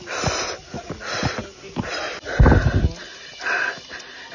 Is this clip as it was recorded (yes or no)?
yes